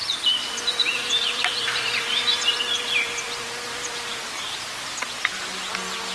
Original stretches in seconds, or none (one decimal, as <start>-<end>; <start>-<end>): 2.6-6.1